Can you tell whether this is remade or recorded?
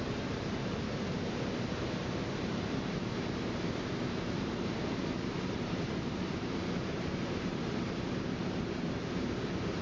remade